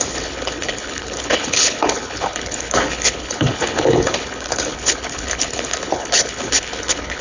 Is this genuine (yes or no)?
no